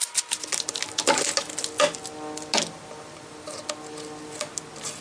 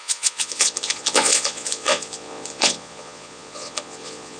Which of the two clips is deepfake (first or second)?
second